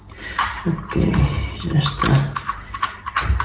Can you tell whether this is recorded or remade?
recorded